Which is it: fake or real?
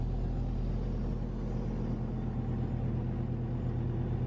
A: real